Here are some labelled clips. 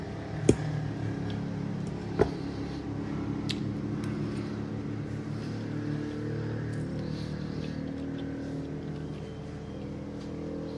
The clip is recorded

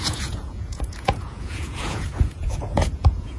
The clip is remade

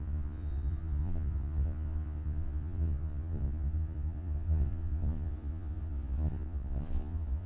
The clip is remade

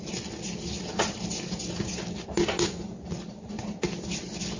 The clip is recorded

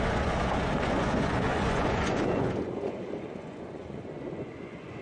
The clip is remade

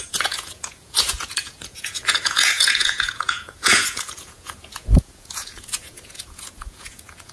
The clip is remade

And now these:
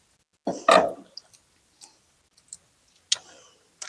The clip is recorded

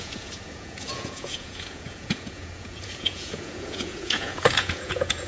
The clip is remade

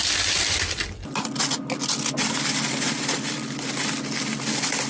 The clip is recorded